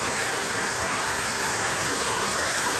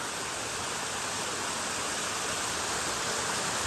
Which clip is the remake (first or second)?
first